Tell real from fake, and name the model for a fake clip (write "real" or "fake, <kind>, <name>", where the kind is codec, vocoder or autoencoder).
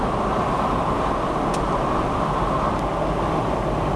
real